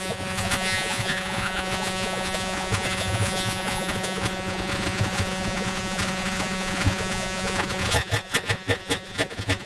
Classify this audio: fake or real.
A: fake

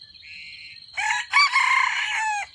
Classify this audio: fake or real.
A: real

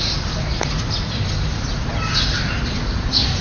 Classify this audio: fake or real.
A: real